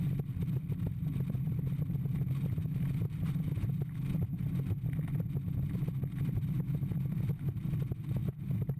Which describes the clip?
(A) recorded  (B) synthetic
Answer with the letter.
A